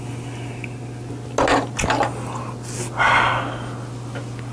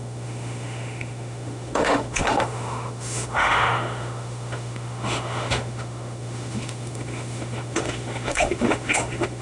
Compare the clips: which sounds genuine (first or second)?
first